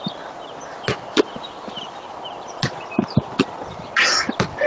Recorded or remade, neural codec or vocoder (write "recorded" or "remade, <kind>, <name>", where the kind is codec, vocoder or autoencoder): recorded